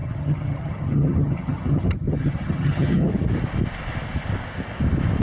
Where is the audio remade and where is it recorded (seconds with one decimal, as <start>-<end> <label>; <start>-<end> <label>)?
0.0-3.1 remade; 3.1-5.2 recorded